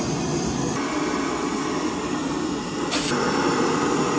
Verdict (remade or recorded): recorded